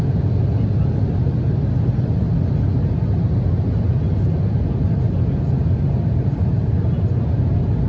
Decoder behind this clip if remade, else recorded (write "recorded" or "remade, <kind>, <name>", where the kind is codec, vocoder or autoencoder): recorded